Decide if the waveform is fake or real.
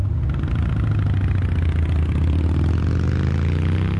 real